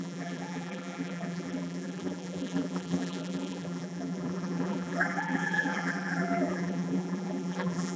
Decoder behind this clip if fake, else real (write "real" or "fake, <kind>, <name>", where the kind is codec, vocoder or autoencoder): fake, vocoder, BigVGAN v2